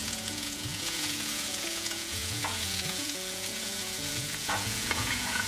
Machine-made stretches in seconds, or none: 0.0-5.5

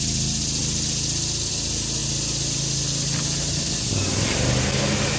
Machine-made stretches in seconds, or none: none

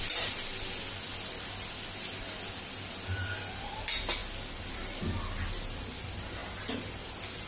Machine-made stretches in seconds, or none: none

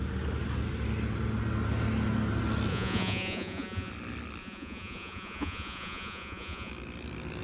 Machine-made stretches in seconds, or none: 2.7-3.9; 4.4-6.7